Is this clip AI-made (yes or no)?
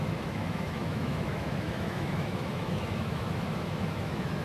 yes